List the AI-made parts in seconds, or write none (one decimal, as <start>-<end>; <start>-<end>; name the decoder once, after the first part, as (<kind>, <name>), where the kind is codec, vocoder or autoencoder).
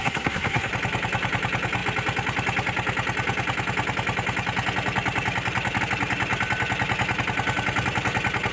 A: 0.0-0.7 (codec, SNAC)